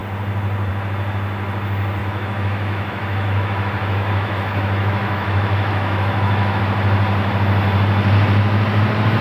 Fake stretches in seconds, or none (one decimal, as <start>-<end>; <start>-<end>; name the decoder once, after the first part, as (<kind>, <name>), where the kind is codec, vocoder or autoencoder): 2.0-6.6 (autoencoder, DAC-VAE)

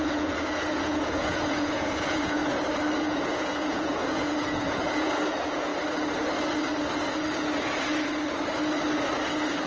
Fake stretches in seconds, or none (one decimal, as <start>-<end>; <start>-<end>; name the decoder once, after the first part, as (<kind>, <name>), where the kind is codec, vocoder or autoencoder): 0.0-2.4 (vocoder, Vocos); 3.0-5.7

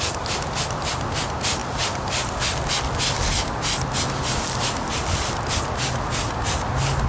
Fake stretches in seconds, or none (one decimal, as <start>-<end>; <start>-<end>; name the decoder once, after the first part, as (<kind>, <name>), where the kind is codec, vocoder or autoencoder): none

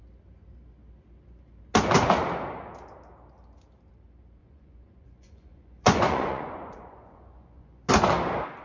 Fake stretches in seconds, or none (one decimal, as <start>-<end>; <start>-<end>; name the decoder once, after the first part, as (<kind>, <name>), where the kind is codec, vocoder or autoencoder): 4.4-7.9 (vocoder, Vocos)

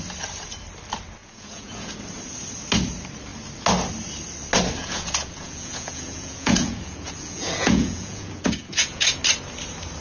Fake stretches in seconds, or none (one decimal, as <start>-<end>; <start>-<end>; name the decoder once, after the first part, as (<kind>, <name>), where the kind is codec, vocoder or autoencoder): 1.2-2.0 (vocoder, Vocos); 4.8-9.2

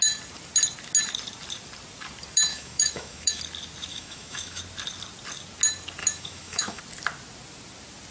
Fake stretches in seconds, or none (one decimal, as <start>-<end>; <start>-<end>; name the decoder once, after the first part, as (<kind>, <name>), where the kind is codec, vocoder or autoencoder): 2.5-3.4 (autoencoder, DAC-VAE); 3.9-4.6; 6.0-6.8